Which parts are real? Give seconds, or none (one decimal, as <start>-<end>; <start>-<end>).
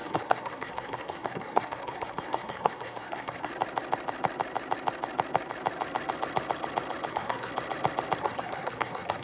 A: 3.5-7.1; 7.5-8.2